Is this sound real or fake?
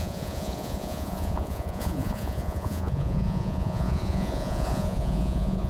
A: fake